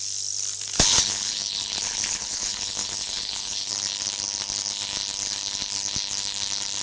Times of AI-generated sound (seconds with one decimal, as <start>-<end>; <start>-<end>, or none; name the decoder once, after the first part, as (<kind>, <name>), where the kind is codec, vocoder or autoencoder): 0.9-3.7 (codec, HILCodec)